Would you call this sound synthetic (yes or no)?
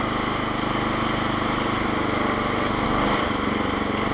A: no